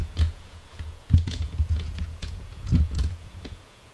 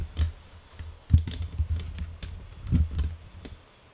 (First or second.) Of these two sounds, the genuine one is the second